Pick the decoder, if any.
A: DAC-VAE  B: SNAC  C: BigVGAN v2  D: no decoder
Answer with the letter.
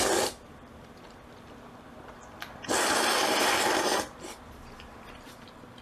C